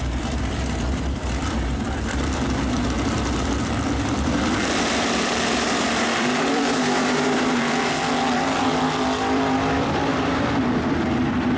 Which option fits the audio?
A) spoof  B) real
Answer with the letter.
A